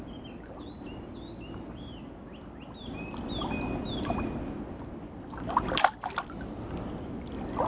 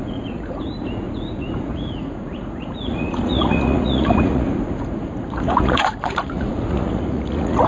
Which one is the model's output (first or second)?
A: second